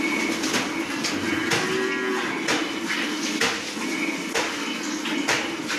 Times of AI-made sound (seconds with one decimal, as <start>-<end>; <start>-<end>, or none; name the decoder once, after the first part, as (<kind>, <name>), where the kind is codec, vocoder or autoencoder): none